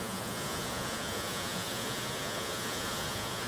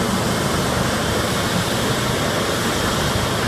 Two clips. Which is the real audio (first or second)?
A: second